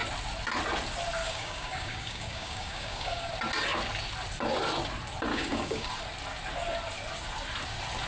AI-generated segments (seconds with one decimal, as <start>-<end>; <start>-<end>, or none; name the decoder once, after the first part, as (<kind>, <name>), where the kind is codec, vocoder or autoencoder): 1.2-3.3 (codec, DAC); 5.3-5.9